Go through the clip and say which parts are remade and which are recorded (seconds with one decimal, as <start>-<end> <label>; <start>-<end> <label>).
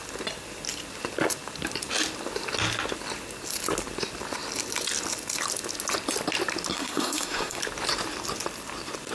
0.0-6.7 recorded; 6.7-7.6 remade; 7.6-9.1 recorded